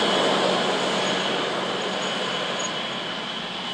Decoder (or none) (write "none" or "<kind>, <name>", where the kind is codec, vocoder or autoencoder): none